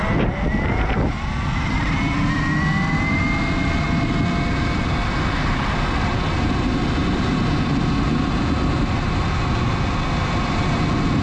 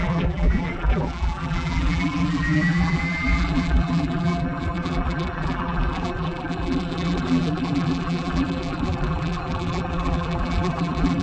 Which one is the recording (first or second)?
first